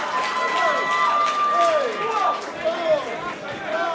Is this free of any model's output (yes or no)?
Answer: yes